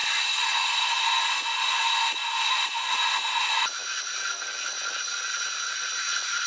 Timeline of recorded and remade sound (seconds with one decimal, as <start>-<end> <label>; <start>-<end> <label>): 0.0-0.9 remade; 0.9-6.5 recorded